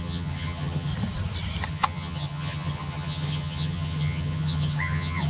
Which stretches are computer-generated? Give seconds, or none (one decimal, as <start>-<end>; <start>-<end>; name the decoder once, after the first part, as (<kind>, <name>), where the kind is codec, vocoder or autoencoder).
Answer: 0.0-0.9 (vocoder, HiFi-GAN); 1.7-5.3